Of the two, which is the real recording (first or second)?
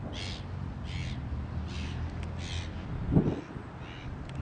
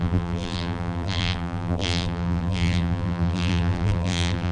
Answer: first